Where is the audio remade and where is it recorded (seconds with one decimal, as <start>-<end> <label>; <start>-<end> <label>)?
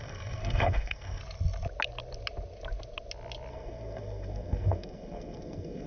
0.0-1.2 remade; 1.2-3.5 recorded; 3.5-5.9 remade